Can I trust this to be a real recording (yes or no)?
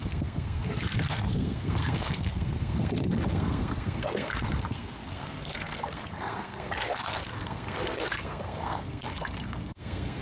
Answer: no